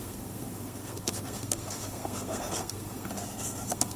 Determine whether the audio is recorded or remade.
remade